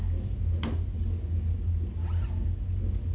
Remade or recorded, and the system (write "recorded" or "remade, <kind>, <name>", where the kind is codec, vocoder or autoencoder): recorded